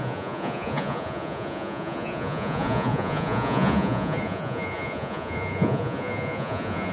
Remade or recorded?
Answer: remade